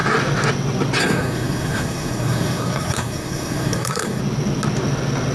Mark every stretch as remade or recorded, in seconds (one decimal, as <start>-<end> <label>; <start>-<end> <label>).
0.0-1.0 recorded; 1.0-4.2 remade; 4.2-5.3 recorded